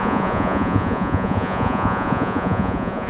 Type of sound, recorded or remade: remade